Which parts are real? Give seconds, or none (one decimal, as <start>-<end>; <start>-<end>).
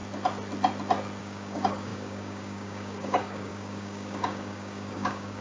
0.0-1.2